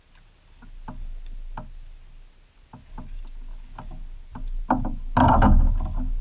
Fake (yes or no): no